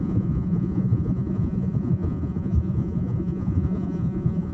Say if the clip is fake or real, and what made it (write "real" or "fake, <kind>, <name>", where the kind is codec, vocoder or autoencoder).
fake, vocoder, Vocos